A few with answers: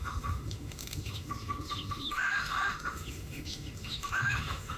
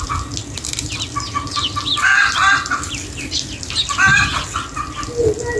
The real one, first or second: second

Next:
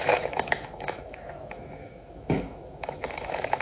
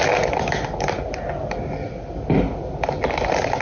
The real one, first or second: second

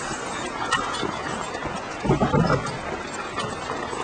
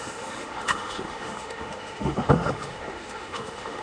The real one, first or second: first